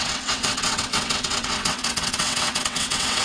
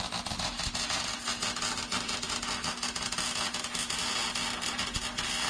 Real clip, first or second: second